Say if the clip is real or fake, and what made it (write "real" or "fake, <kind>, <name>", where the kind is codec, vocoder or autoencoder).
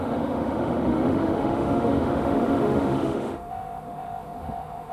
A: fake, autoencoder, DAC-VAE